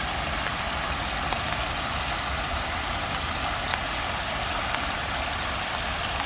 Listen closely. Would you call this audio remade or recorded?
recorded